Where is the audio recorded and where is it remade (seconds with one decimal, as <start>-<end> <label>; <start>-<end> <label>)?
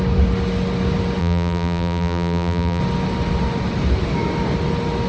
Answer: 0.0-1.2 recorded; 1.2-2.8 remade; 2.8-5.1 recorded